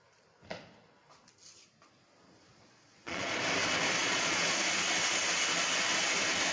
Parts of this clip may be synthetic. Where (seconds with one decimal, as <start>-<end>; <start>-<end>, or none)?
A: 2.5-3.4; 4.0-4.6